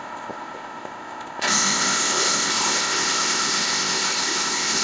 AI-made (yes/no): yes